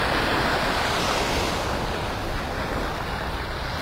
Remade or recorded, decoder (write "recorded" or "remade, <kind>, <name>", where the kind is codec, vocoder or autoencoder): recorded